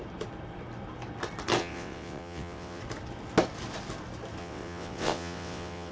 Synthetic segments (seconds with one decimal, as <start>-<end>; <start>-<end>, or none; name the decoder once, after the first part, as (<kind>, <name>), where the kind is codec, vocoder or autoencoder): 1.6-2.8 (vocoder, WaveNeXt); 4.4-5.9

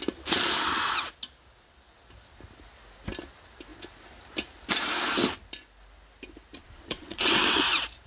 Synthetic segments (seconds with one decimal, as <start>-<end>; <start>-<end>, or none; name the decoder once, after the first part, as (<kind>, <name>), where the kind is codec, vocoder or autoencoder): 6.6-7.6 (vocoder, WaveNeXt)

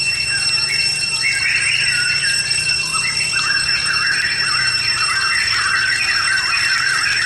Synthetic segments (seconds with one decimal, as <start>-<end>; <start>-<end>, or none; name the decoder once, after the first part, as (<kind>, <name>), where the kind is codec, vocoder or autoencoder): none